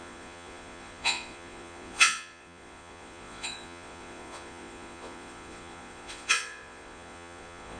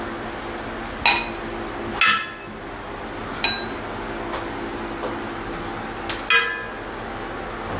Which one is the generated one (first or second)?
first